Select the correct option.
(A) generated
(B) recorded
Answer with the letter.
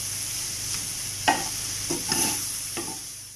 B